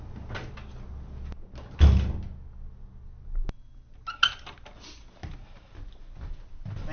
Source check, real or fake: real